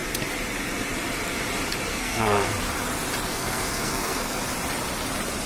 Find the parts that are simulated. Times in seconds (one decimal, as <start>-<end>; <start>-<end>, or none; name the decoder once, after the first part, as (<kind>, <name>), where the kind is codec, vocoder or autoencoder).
1.9-2.5 (codec, SNAC); 3.3-4.4